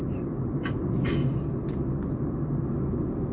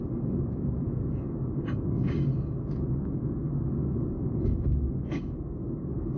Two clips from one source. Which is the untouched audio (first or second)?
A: first